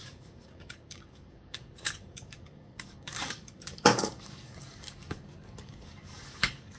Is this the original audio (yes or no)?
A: no